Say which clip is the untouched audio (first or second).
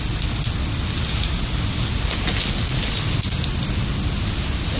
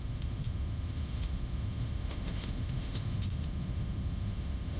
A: first